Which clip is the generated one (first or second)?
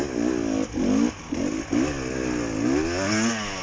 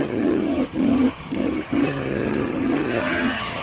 second